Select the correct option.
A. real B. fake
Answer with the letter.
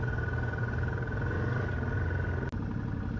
A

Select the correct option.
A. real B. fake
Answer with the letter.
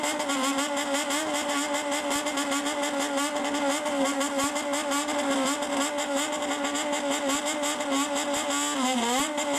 A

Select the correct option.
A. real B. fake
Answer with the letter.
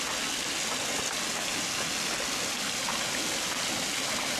A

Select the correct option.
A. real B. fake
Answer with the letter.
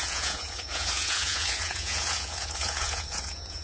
B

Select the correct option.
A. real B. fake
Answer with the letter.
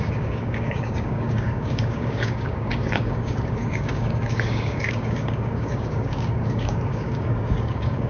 B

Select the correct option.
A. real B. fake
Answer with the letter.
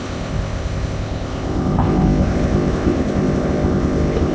B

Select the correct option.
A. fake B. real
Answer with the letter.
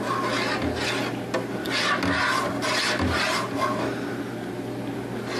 B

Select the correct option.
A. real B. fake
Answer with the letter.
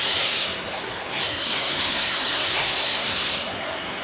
B